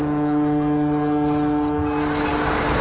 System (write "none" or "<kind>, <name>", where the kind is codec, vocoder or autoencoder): none